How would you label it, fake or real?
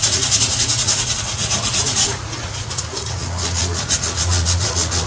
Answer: fake